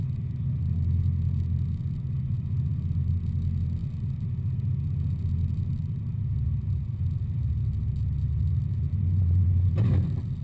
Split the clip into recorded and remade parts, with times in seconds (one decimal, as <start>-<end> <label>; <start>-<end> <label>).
0.0-8.9 recorded; 8.9-9.7 remade; 9.7-10.4 recorded